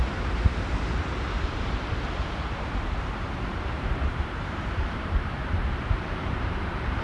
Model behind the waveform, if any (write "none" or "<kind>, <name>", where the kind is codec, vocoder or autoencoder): vocoder, BigVGAN v2